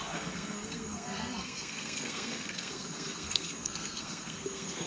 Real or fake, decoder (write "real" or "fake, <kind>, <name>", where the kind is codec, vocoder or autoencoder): fake, codec, SNAC